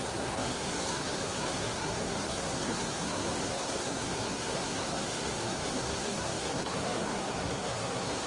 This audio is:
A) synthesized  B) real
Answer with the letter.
A